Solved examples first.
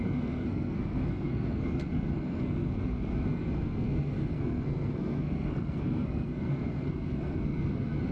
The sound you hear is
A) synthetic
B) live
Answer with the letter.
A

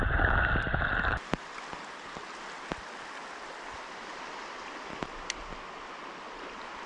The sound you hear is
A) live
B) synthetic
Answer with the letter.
A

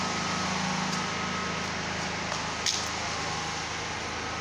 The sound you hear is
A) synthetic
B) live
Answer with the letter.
B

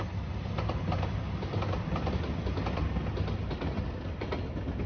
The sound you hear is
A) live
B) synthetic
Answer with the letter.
A